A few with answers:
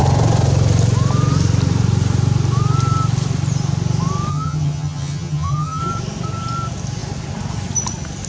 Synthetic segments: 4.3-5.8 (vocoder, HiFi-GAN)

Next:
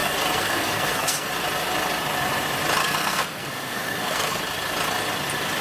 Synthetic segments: 0.0-1.3 (codec, SNAC); 2.8-4.4

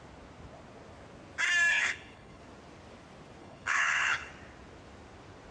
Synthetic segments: 1.7-2.4 (codec, HILCodec); 3.4-4.3

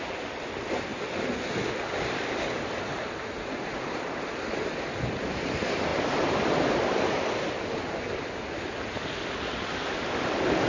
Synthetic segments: none

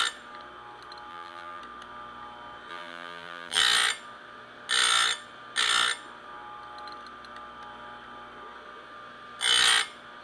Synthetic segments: 1.1-1.6 (vocoder, BigVGAN v2); 2.7-3.6

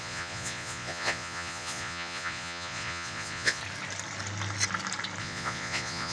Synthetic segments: 0.0-3.6 (vocoder, Vocos); 5.2-6.1